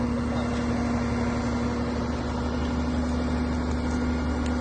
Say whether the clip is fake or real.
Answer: real